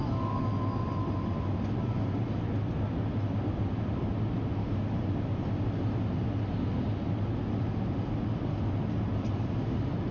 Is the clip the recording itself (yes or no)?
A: yes